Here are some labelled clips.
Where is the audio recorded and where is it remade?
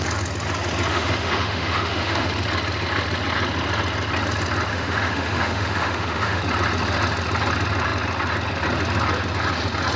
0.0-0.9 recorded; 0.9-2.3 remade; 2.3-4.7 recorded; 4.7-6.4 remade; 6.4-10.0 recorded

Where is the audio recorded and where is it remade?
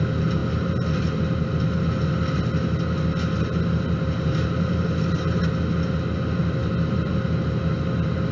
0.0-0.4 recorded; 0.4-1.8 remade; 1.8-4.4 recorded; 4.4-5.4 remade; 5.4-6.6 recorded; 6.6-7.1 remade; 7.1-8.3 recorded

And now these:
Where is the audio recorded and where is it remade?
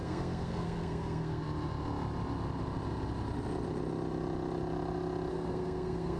0.0-1.4 remade; 1.4-5.3 recorded; 5.3-6.2 remade